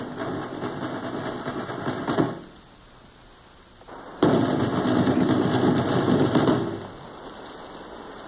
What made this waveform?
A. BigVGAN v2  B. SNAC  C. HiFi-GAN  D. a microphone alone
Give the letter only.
D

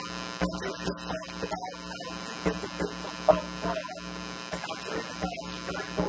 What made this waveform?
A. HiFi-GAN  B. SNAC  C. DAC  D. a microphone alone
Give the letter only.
D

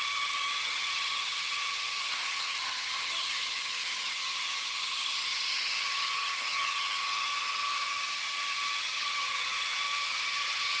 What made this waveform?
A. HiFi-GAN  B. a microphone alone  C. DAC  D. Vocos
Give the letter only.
A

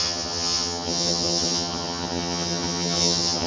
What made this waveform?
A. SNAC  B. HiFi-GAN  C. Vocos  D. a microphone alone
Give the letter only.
B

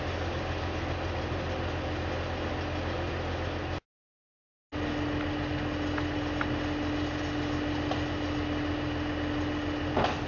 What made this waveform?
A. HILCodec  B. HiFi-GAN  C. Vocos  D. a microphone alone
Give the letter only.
D